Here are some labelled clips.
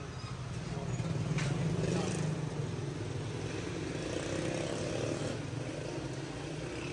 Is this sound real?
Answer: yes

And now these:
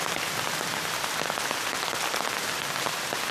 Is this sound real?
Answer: yes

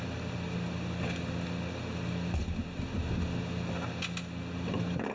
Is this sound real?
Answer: yes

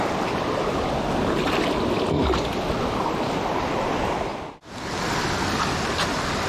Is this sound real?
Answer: yes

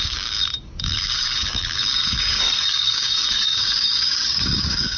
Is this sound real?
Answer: no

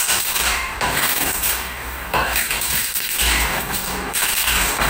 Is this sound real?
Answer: no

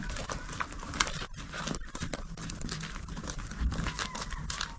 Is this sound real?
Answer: yes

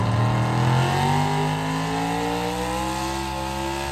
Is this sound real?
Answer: yes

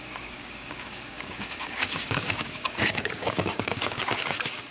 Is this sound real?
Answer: no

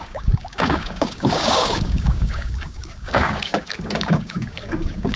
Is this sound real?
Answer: no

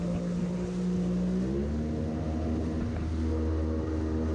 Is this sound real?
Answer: yes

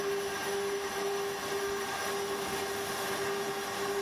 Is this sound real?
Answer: yes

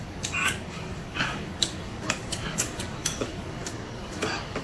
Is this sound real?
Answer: no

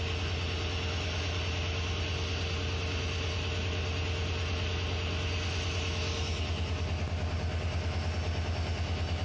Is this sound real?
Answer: yes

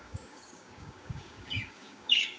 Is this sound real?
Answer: no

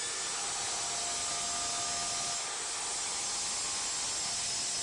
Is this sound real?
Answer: yes